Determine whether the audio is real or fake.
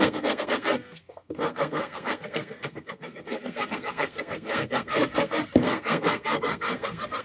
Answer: fake